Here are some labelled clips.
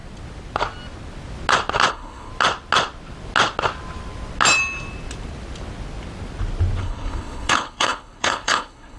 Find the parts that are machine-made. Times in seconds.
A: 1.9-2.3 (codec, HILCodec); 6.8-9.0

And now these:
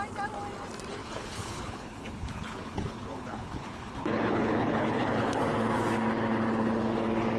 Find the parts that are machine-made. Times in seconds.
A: 1.0-5.4 (codec, HILCodec)

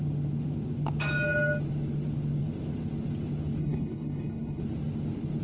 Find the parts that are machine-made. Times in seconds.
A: 3.6-4.6 (codec, HILCodec)

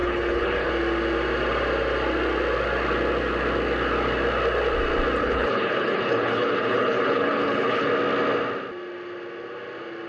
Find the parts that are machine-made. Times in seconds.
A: 0.0-0.7 (codec, HILCodec); 5.2-7.9

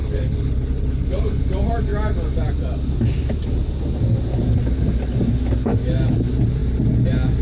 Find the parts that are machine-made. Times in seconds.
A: 0.0-1.4 (codec, HILCodec)

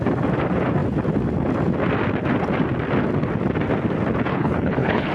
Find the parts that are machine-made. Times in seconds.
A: 4.3-5.1 (codec, HILCodec)

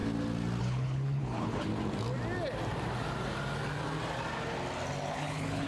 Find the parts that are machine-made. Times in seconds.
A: 0.6-1.7 (codec, HILCodec); 5.1-5.7